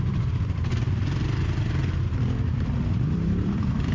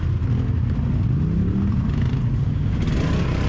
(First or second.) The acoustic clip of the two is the second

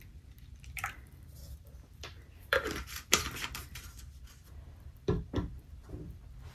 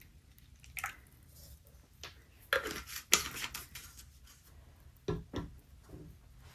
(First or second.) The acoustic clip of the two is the second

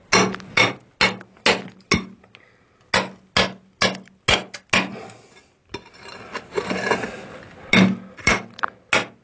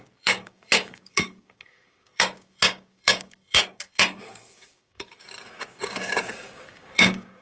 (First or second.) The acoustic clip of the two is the first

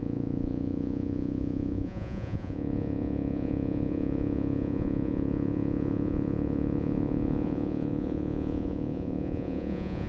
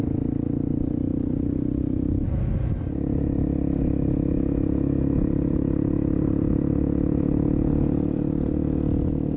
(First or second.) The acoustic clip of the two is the second